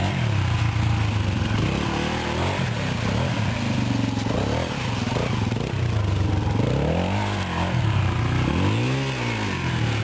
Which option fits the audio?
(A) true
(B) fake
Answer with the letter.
A